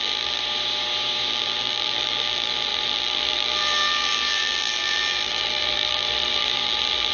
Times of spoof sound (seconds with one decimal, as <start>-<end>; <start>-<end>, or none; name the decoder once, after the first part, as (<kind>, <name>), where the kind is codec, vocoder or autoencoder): 0.0-0.4 (vocoder, BigVGAN v2); 1.3-7.1